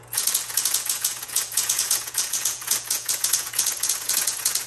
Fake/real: fake